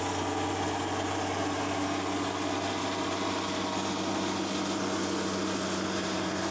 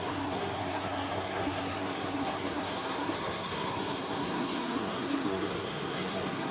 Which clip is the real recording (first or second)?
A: first